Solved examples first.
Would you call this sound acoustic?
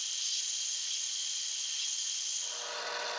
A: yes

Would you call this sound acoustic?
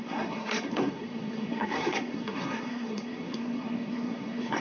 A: no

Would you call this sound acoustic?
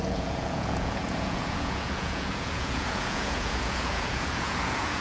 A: no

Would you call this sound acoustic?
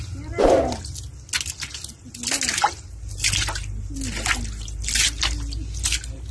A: yes